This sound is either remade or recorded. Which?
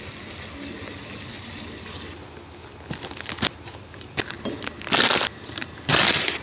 recorded